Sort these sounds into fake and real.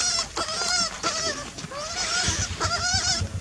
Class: real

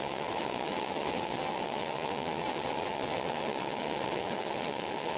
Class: fake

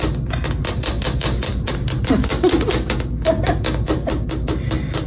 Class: real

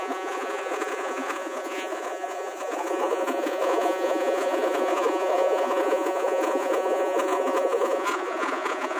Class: fake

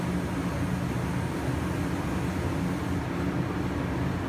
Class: real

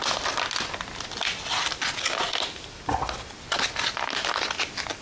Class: real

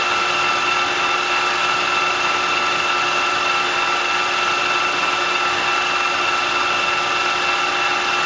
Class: real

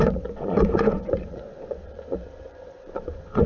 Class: fake